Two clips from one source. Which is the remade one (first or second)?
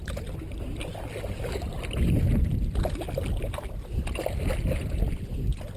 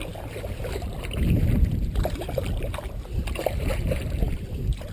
second